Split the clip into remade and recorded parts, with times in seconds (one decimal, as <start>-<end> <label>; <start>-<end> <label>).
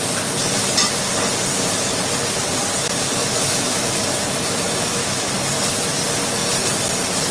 0.0-3.2 recorded; 3.2-5.3 remade; 5.3-7.3 recorded